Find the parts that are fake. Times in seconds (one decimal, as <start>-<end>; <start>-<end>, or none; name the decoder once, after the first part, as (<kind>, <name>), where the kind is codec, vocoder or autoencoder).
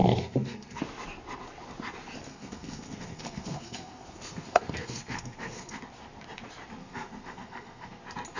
0.0-0.8 (codec, SNAC); 2.3-5.8; 6.8-8.0